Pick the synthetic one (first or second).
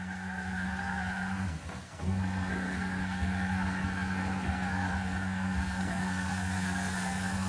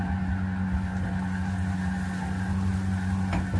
first